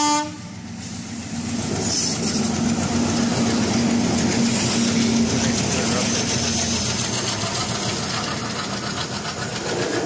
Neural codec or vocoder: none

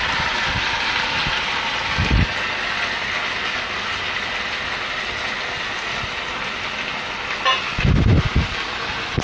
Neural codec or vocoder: none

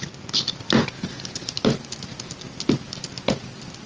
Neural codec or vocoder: none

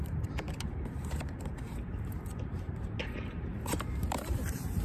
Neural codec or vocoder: vocoder, BigVGAN v2